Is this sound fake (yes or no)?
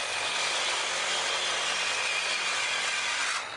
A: no